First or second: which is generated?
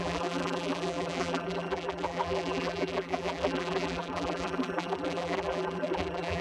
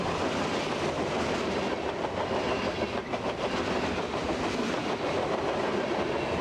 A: first